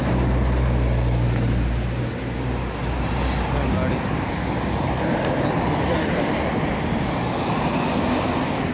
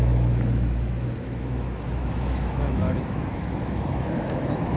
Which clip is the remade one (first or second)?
second